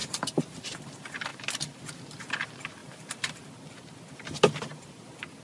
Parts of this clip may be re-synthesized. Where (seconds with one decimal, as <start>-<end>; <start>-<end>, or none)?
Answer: 0.0-0.6; 2.8-3.4